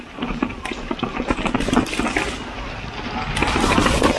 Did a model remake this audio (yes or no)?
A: no